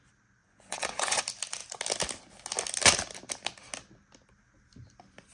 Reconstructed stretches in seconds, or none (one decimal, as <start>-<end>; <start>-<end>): 0.4-1.2